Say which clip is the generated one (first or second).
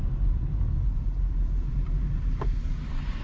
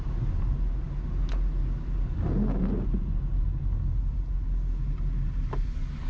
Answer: first